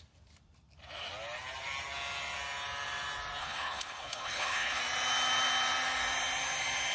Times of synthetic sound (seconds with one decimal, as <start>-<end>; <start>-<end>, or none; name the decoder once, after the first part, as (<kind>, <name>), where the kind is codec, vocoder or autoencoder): 3.4-4.8 (codec, HILCodec)